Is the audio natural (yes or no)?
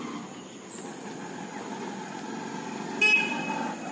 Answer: yes